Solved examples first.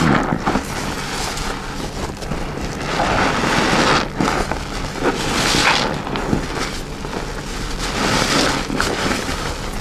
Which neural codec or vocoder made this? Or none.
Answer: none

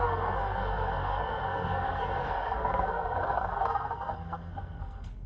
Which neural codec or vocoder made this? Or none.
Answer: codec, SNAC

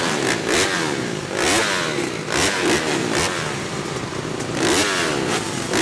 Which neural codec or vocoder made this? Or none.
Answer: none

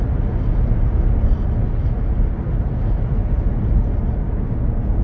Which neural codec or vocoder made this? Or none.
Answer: none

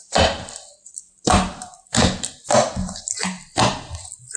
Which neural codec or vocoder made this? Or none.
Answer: vocoder, BigVGAN v2